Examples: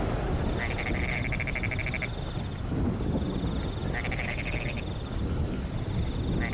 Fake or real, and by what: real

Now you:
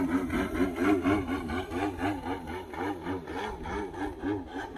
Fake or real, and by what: real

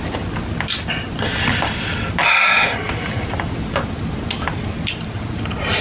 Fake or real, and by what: real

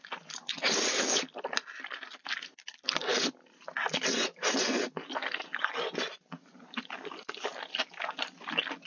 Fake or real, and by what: real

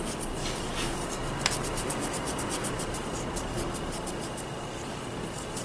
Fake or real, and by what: real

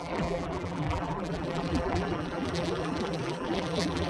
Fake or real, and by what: fake, vocoder, BigVGAN v2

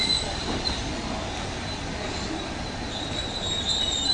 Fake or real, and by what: real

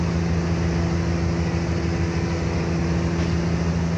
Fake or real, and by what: real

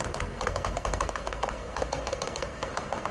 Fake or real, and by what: fake, codec, SNAC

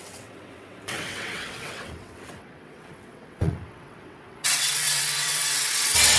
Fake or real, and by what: fake, vocoder, WaveNeXt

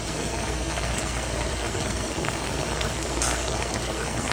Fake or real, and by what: fake, codec, SNAC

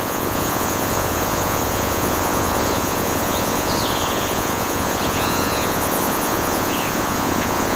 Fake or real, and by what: fake, vocoder, Vocos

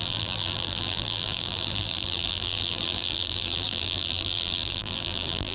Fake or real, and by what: fake, vocoder, BigVGAN v2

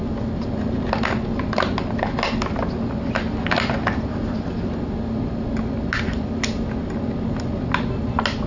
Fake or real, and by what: real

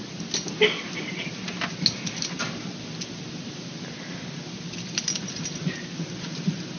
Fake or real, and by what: real